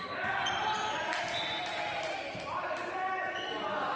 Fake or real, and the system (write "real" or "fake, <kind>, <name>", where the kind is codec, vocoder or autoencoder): real